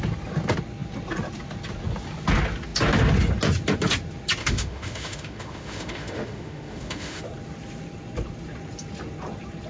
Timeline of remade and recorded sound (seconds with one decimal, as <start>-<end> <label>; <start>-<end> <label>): 0.0-4.4 recorded; 4.4-7.2 remade; 7.2-9.7 recorded